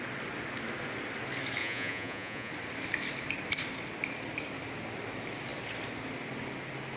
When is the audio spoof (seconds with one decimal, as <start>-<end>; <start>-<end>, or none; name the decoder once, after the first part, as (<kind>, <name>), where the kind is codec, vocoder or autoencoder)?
1.6-2.5 (vocoder, Vocos)

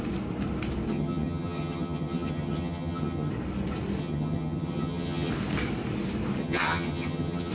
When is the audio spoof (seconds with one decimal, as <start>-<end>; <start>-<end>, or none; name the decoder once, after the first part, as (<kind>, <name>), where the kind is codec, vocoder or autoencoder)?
0.9-3.3 (vocoder, HiFi-GAN); 4.0-5.3; 6.4-7.5

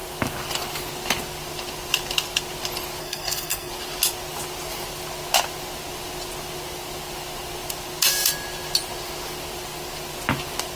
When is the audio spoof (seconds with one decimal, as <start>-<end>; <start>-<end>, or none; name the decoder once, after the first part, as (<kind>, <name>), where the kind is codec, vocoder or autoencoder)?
3.0-3.7 (codec, SNAC)

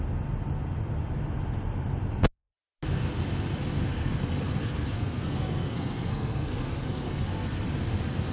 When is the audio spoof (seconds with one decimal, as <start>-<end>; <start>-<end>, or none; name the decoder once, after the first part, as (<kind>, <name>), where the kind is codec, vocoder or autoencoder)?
3.9-7.7 (codec, SNAC)

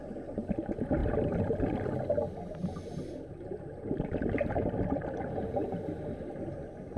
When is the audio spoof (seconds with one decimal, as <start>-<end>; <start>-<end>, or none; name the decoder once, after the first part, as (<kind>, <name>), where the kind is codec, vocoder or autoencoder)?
none